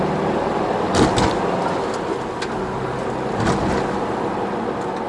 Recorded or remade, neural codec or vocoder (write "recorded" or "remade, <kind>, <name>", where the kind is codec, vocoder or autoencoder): recorded